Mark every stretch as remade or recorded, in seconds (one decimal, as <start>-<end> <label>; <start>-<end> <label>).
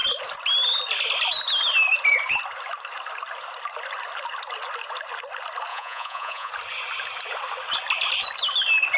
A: 0.0-5.7 recorded; 5.7-6.5 remade; 6.5-9.0 recorded